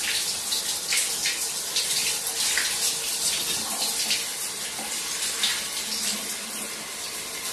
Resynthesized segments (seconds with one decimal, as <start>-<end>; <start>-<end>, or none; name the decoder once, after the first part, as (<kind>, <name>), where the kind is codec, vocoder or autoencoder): none